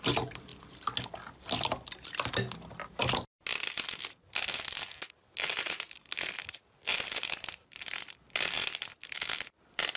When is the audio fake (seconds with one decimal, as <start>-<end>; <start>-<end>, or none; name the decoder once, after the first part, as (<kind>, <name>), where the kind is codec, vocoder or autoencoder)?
none